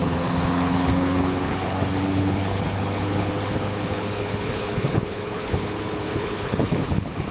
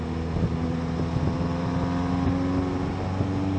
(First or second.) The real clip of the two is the second